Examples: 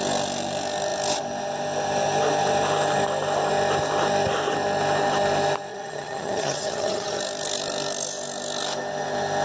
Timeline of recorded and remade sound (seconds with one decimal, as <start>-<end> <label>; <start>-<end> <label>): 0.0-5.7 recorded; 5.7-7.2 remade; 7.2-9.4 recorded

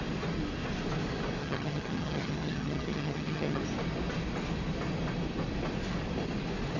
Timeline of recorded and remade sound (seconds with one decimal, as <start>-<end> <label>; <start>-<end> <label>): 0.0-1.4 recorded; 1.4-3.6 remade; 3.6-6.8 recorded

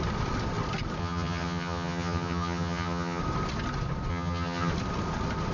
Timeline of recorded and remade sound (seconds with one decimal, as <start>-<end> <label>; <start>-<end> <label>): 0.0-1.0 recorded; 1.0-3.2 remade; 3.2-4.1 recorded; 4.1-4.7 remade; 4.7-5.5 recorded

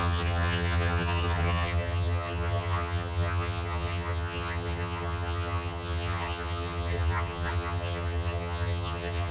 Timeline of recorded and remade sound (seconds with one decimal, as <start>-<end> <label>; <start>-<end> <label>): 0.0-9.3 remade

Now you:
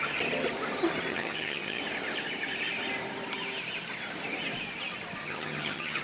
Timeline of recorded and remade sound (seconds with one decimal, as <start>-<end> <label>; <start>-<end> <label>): 0.0-1.1 recorded; 1.1-1.8 remade; 1.8-5.2 recorded; 5.2-6.0 remade